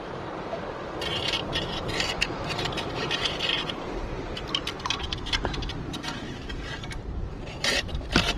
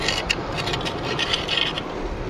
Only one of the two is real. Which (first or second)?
second